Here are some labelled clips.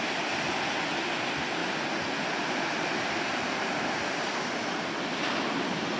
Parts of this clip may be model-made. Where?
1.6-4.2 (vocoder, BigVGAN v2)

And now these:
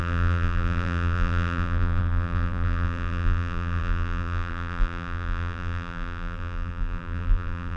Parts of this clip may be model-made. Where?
0.0-7.8 (vocoder, BigVGAN v2)

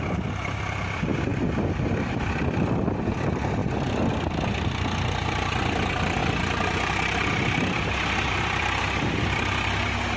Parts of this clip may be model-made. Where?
0.0-1.3 (vocoder, BigVGAN v2); 2.1-3.6; 4.1-6.2; 8.3-10.2

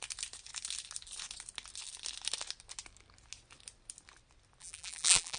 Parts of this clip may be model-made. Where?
4.6-5.4 (vocoder, BigVGAN v2)

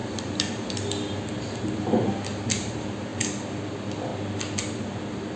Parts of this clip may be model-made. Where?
2.5-4.1 (vocoder, BigVGAN v2); 5.0-5.4

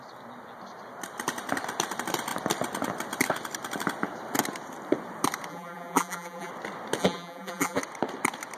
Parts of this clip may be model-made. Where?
5.5-6.5 (vocoder, BigVGAN v2); 7.0-7.8

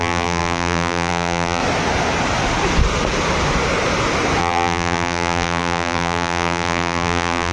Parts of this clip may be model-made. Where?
0.0-1.6 (vocoder, BigVGAN v2); 4.4-7.5